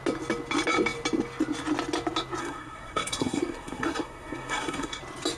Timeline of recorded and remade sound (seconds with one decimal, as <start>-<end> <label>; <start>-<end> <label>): 0.0-2.4 recorded; 2.4-5.0 remade; 5.0-5.4 recorded